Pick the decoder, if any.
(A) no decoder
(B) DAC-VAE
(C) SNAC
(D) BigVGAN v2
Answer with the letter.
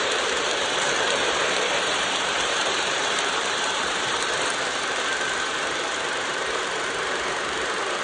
D